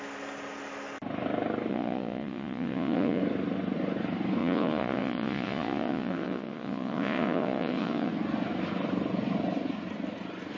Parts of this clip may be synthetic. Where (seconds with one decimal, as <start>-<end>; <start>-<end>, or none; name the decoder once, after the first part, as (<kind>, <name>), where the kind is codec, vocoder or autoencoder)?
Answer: 1.7-3.2 (vocoder, Vocos); 4.4-8.1